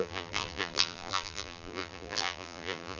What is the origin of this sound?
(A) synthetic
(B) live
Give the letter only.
A